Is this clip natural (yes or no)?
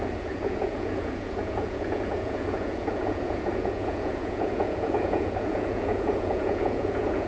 no